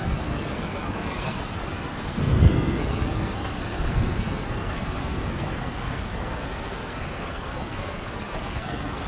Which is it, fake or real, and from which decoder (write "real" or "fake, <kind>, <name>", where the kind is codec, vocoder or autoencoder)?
fake, codec, SNAC